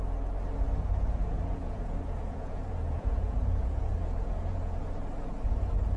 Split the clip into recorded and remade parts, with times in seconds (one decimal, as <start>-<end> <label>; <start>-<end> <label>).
0.0-1.2 recorded; 1.2-4.8 remade; 4.8-6.0 recorded